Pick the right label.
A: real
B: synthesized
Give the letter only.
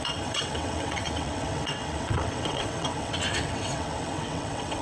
B